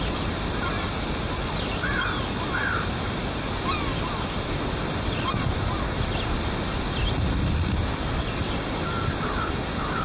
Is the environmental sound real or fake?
real